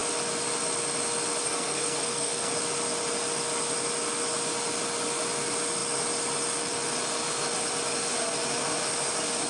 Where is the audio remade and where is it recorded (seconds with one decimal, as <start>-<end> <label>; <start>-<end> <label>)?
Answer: 0.0-1.4 recorded; 1.4-2.5 remade; 2.5-9.5 recorded